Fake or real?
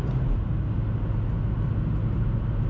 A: real